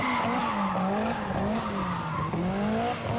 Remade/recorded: recorded